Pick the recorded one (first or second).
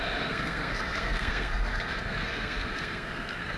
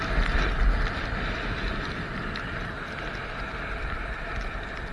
second